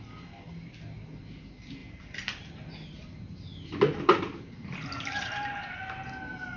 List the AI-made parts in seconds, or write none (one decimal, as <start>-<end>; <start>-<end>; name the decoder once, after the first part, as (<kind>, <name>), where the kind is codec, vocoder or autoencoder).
1.8-5.8 (vocoder, BigVGAN v2)